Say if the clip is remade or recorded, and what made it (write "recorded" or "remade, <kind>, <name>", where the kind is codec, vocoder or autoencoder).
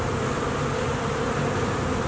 recorded